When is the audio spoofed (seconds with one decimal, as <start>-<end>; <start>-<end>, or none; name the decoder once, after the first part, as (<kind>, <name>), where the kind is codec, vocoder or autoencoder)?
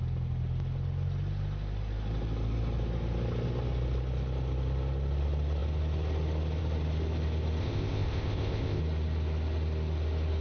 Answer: 7.6-8.8 (codec, ZipCodec)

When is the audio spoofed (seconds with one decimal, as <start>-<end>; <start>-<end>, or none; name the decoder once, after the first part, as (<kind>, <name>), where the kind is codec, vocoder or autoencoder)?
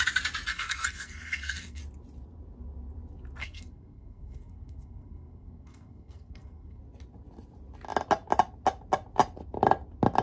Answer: 0.5-1.8 (codec, SNAC); 3.4-6.8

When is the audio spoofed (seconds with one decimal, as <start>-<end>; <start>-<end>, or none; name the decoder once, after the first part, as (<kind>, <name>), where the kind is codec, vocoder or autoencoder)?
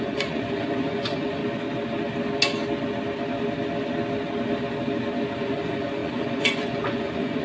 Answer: 0.0-1.4 (vocoder, Vocos); 5.4-7.4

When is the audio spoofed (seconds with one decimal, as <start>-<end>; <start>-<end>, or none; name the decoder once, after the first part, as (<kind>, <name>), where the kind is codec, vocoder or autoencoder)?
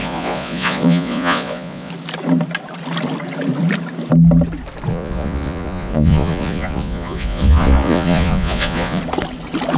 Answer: 0.0-1.9 (vocoder, Vocos); 4.9-9.0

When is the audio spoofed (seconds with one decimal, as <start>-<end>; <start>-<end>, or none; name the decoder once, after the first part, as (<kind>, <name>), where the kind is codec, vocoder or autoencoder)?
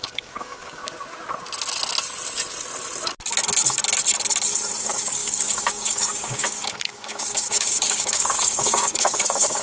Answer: 0.0-0.8 (codec, DAC); 4.8-9.6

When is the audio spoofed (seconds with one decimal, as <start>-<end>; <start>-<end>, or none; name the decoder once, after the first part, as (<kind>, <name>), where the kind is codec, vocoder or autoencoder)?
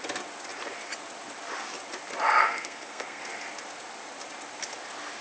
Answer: 2.4-3.2 (codec, SNAC)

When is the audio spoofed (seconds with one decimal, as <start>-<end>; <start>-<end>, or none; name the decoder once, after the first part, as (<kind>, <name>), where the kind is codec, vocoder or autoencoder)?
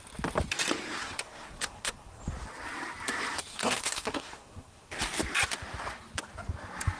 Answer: 1.0-2.2 (codec, SNAC); 3.5-5.0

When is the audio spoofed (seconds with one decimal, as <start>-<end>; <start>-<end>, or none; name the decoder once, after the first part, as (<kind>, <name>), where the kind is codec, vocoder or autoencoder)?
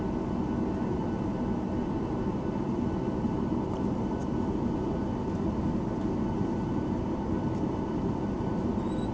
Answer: none